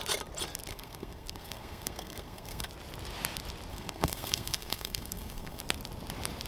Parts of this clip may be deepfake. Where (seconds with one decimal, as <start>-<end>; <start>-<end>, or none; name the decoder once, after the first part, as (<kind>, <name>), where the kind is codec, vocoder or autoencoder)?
0.7-2.7 (codec, SNAC); 3.7-5.6